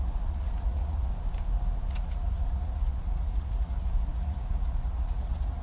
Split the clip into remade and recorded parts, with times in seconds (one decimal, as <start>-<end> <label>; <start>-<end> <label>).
0.0-1.1 remade; 1.1-1.9 recorded; 1.9-5.6 remade